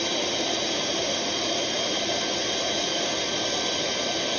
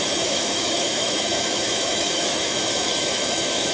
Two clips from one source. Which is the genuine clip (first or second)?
first